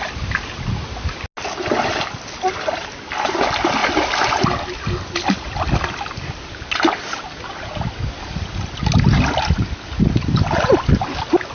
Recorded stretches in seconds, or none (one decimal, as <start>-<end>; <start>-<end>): 0.0-11.5